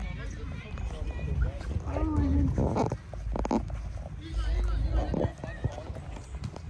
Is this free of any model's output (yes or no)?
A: yes